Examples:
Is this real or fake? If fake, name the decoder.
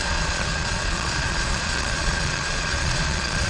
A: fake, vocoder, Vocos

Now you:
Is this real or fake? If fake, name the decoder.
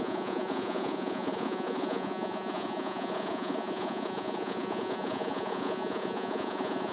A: fake, vocoder, Vocos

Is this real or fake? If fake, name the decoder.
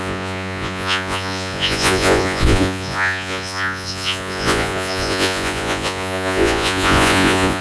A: fake, vocoder, Vocos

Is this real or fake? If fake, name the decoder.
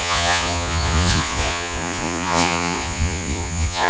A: fake, vocoder, Vocos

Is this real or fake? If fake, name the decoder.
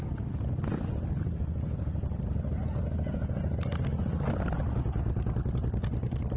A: real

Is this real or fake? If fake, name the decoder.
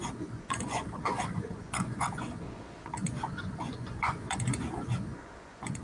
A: fake, vocoder, Vocos